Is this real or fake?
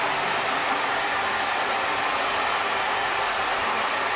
fake